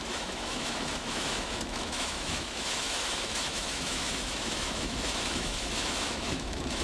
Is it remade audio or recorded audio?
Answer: remade